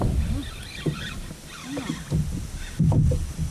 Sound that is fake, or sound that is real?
real